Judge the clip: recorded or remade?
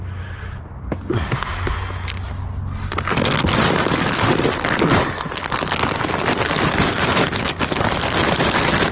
recorded